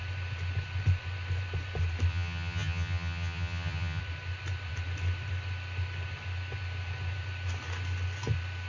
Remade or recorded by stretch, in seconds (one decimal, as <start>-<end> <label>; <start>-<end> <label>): 0.0-2.1 recorded; 2.1-4.0 remade; 4.0-8.7 recorded